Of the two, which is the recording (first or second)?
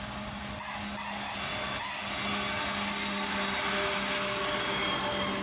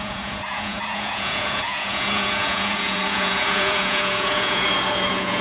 first